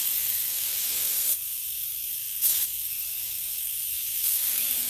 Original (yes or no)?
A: no